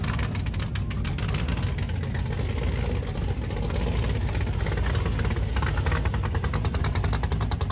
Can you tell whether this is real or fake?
real